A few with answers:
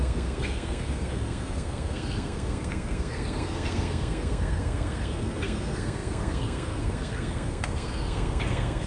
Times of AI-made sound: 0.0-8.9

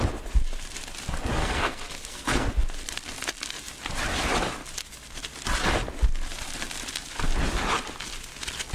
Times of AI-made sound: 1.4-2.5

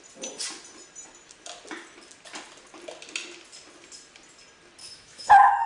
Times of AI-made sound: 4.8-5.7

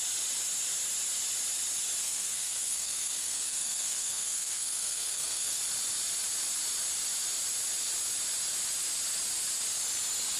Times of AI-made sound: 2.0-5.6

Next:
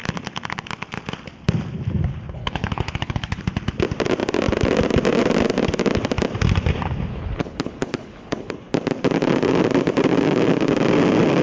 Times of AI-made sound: 2.4-3.4; 7.1-8.5

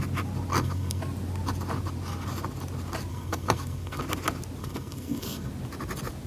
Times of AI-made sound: 0.5-1.0; 3.1-4.0; 4.6-5.5

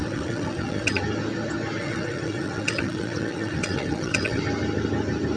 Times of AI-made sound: 0.0-1.0; 1.8-4.4